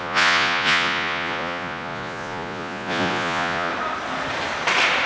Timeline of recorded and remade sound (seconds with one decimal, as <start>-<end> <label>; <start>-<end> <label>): 0.0-3.7 remade; 3.7-5.1 recorded